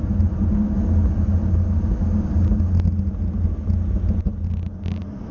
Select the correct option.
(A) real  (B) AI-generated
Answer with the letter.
A